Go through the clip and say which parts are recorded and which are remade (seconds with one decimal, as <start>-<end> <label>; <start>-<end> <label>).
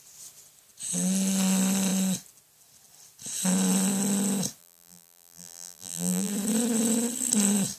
0.0-4.6 recorded; 4.6-6.3 remade; 6.3-7.8 recorded